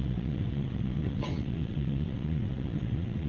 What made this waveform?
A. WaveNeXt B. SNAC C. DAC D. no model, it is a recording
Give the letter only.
A